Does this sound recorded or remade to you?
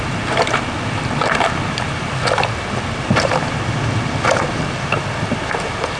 recorded